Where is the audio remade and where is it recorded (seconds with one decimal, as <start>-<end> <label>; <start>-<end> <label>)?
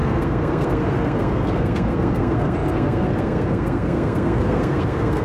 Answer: 0.0-5.2 remade